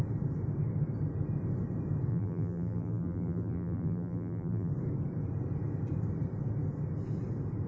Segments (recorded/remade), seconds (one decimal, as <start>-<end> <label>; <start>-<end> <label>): 0.0-2.1 recorded; 2.1-4.7 remade; 4.7-7.7 recorded